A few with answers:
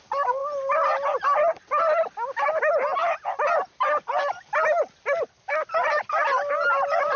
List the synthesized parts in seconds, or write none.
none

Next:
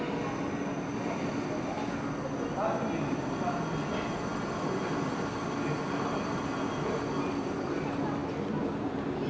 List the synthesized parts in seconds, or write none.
none

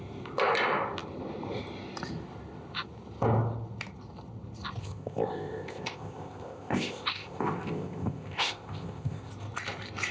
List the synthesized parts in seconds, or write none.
4.8-9.3 (codec, ZipCodec)

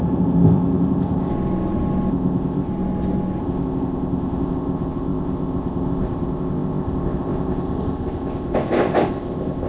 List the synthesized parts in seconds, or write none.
0.0-1.3 (codec, ZipCodec); 2.1-2.7; 3.4-9.7